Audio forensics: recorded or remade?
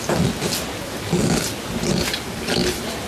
recorded